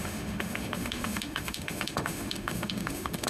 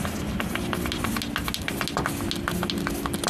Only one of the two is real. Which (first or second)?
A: second